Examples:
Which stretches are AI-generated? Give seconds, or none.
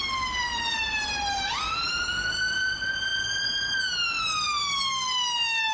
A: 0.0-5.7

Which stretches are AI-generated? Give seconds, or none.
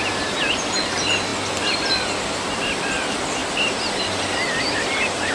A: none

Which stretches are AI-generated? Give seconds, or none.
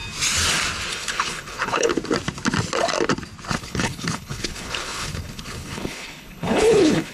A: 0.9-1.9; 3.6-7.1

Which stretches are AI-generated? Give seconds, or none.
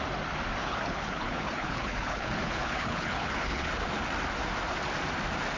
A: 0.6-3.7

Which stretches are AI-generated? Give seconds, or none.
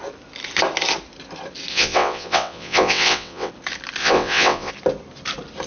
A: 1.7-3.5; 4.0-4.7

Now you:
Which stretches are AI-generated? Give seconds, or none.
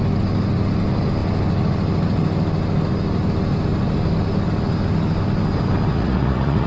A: 5.9-6.7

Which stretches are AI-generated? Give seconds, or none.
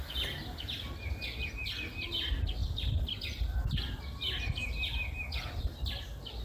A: none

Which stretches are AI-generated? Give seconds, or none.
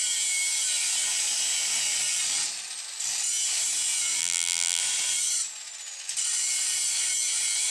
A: 4.2-4.8